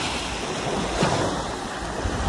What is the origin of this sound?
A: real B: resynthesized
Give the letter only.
A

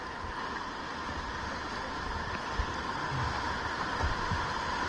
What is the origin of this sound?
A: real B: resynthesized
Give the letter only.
A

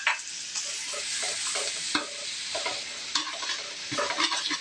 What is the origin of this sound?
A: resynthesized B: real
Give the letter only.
B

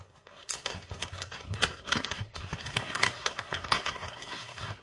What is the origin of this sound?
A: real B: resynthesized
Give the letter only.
B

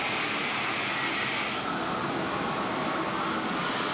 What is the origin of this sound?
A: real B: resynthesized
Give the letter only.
A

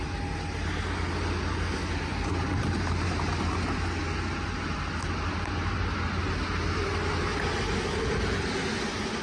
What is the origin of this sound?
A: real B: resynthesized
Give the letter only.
A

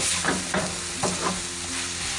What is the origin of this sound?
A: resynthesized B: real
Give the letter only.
B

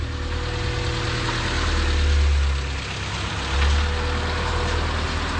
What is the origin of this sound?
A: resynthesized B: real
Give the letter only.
B